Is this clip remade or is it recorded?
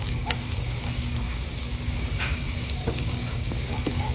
remade